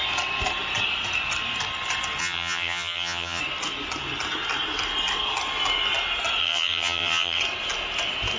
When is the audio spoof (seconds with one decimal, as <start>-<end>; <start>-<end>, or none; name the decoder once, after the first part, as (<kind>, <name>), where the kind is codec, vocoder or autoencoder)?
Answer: 2.2-3.4 (vocoder, HiFi-GAN); 6.4-7.4